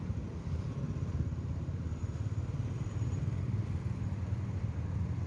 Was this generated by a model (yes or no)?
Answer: yes